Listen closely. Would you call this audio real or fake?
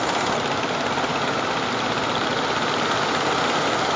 real